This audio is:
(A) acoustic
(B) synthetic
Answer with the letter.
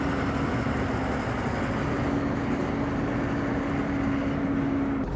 A